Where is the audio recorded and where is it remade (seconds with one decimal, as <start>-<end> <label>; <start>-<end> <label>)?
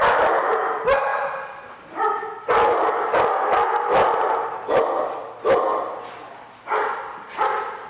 0.0-7.9 recorded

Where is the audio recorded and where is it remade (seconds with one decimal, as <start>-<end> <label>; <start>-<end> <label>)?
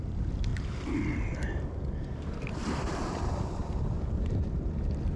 0.0-0.5 remade; 0.5-2.8 recorded; 2.8-5.2 remade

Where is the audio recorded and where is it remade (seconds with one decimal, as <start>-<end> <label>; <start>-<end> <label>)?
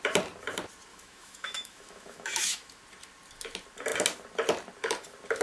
0.0-0.9 recorded; 0.9-2.8 remade; 2.8-5.4 recorded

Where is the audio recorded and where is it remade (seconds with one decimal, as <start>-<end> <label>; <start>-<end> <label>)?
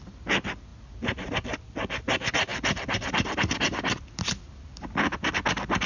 0.0-2.5 recorded; 2.5-5.3 remade; 5.3-5.9 recorded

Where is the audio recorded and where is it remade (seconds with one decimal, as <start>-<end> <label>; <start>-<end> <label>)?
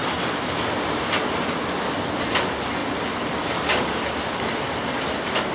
0.0-5.5 recorded